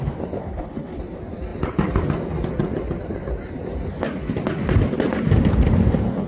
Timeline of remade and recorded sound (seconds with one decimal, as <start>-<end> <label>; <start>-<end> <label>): 0.0-0.4 recorded; 0.4-1.0 remade; 1.0-6.3 recorded